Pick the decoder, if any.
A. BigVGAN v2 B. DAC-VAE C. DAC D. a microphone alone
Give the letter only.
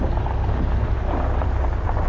D